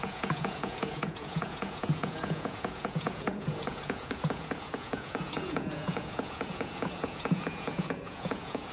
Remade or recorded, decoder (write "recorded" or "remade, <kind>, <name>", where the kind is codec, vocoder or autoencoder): remade, vocoder, Vocos